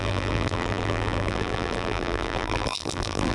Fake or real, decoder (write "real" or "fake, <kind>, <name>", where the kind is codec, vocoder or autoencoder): fake, vocoder, BigVGAN v2